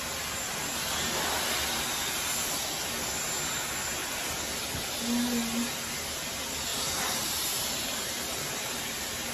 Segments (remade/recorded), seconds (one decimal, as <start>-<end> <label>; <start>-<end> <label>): 0.0-4.0 recorded; 4.0-4.5 remade; 4.5-6.7 recorded; 6.7-9.3 remade